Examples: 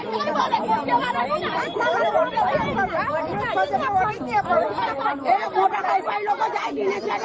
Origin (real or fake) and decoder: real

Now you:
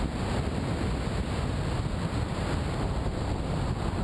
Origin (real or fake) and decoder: real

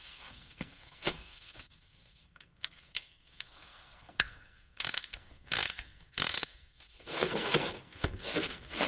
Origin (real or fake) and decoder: fake, codec, SNAC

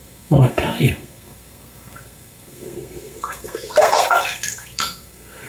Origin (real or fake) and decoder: fake, codec, SNAC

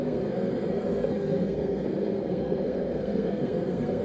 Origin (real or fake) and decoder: fake, codec, SNAC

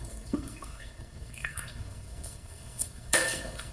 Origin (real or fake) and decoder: fake, codec, SNAC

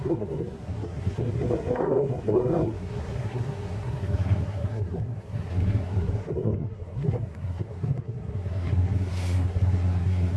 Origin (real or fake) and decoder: fake, codec, SNAC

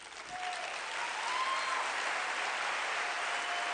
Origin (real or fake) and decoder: real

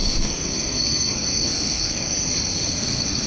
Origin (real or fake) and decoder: fake, codec, SNAC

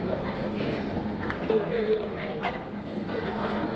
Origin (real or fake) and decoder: fake, codec, SNAC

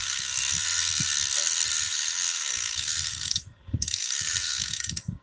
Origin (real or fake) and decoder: fake, codec, SNAC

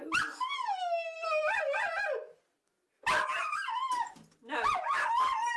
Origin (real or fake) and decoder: real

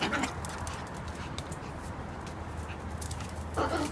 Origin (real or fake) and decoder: real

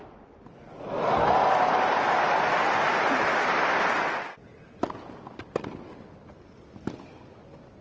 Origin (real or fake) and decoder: real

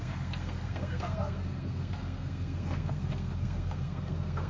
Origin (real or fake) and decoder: fake, codec, SNAC